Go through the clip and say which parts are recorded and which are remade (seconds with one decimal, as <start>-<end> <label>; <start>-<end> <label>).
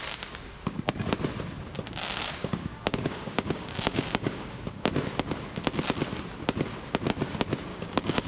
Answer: 0.0-2.4 recorded; 2.4-4.9 remade; 4.9-7.7 recorded; 7.7-8.3 remade